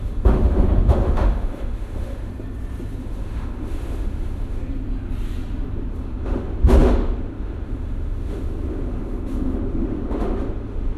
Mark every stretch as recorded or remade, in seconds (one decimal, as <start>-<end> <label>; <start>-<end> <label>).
0.0-2.3 remade; 2.3-3.0 recorded; 3.0-4.6 remade; 4.6-5.9 recorded; 5.9-11.0 remade